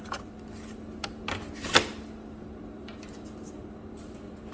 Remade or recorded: recorded